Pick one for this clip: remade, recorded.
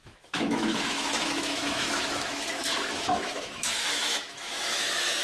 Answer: remade